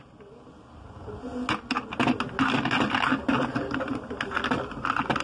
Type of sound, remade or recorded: recorded